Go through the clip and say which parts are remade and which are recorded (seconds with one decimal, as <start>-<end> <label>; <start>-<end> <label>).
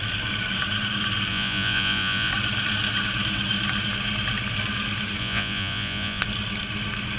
0.0-1.3 recorded; 1.3-2.3 remade; 2.3-5.2 recorded; 5.2-6.2 remade; 6.2-7.2 recorded